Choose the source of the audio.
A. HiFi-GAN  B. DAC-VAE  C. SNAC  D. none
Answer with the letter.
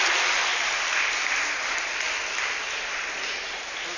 D